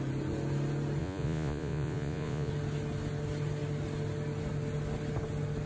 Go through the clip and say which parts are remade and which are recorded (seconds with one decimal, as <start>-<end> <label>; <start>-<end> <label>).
0.0-1.0 recorded; 1.0-2.5 remade; 2.5-5.7 recorded